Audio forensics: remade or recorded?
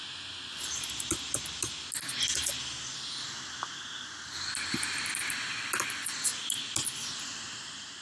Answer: recorded